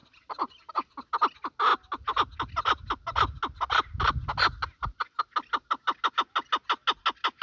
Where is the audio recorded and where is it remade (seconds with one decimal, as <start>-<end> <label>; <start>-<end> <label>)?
0.0-0.7 remade; 0.7-7.4 recorded